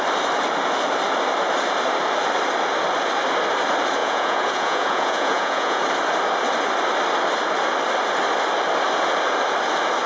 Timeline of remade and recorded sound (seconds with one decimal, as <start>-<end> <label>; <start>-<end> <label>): 0.0-4.0 recorded; 4.0-5.8 remade; 5.8-10.1 recorded